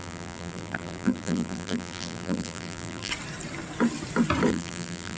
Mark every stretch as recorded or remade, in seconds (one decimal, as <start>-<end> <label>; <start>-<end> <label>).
0.0-3.1 remade; 3.1-4.5 recorded; 4.5-5.2 remade